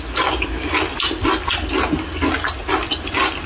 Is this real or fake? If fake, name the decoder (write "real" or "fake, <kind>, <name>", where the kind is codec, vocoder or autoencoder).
real